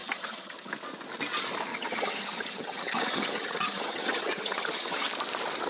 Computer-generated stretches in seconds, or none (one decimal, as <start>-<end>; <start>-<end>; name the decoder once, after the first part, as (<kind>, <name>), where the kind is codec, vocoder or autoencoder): 0.0-0.7 (vocoder, HiFi-GAN); 1.7-5.1